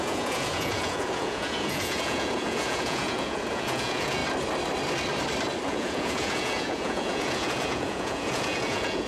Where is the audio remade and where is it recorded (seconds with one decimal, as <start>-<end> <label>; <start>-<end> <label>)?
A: 0.0-4.2 remade; 4.2-5.7 recorded; 5.7-9.1 remade